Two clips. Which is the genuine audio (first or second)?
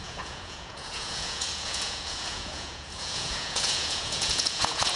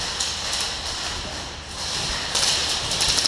second